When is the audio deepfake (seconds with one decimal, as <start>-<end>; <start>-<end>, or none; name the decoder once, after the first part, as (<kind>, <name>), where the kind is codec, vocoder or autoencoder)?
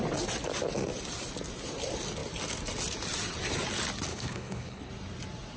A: 4.1-4.9 (codec, HILCodec)